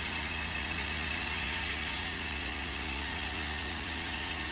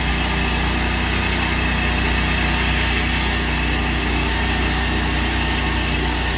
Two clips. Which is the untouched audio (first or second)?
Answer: second